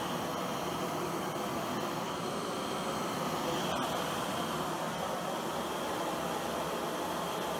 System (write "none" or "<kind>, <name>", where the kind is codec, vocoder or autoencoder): none